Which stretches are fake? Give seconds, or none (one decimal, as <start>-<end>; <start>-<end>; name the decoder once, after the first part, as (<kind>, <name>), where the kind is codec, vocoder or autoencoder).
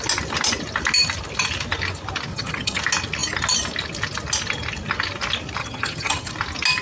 2.3-2.8 (vocoder, HiFi-GAN); 5.6-6.3